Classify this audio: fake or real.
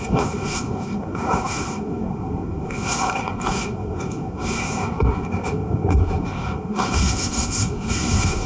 fake